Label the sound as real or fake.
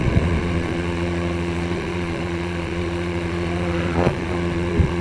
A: fake